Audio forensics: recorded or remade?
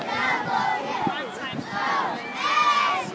recorded